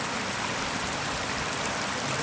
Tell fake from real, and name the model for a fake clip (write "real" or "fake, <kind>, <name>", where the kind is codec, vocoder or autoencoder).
real